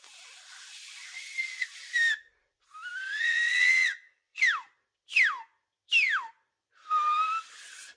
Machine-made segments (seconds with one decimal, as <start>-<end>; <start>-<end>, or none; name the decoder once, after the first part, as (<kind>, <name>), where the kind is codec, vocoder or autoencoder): 3.0-4.4 (vocoder, WaveNeXt)